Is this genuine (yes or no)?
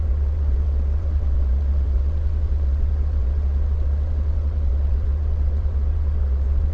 no